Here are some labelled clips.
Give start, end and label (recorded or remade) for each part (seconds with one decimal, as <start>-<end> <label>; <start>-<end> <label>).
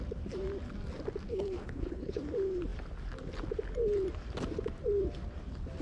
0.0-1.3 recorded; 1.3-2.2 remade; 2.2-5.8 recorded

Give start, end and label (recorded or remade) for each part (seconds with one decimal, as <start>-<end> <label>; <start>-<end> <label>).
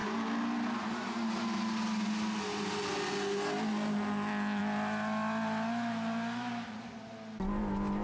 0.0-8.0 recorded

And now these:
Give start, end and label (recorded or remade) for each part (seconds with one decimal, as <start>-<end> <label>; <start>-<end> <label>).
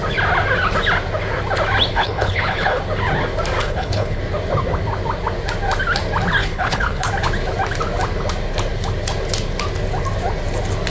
0.0-1.9 recorded; 1.9-2.8 remade; 2.8-3.6 recorded; 3.6-4.2 remade; 4.2-6.4 recorded; 6.4-7.1 remade; 7.1-10.9 recorded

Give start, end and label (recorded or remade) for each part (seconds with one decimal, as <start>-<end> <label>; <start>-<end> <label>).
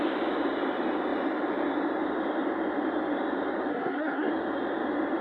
0.0-3.7 recorded; 3.7-4.3 remade; 4.3-5.2 recorded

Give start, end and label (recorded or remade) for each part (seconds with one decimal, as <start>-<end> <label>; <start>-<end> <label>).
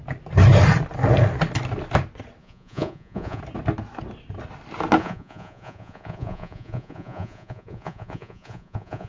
0.0-2.4 recorded; 2.4-3.4 remade; 3.4-5.0 recorded; 5.0-9.1 remade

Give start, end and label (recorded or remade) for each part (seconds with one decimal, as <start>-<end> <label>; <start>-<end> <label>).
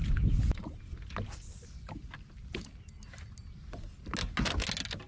0.0-5.1 recorded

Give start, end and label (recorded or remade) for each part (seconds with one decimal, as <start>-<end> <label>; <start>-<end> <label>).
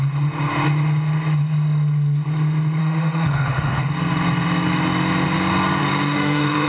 0.0-2.8 recorded; 2.8-3.9 remade; 3.9-5.8 recorded; 5.8-6.7 remade